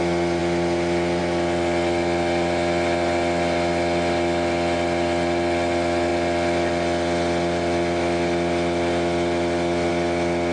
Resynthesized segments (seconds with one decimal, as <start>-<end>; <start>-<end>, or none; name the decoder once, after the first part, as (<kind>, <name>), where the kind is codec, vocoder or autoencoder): none